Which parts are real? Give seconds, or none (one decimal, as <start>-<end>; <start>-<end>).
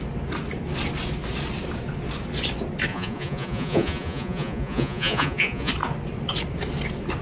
0.0-2.9; 5.7-7.2